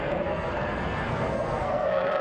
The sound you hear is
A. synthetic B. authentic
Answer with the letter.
A